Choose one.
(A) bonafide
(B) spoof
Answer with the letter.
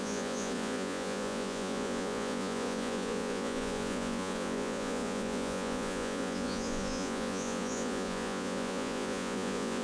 B